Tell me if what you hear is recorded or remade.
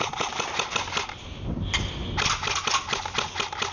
recorded